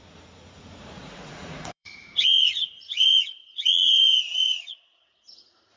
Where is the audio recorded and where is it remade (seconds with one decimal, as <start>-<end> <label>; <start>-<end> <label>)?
0.0-5.8 remade